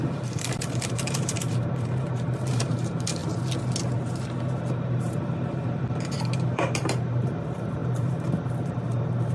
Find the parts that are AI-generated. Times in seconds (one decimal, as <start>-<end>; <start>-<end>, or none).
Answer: 0.0-3.2; 4.7-9.3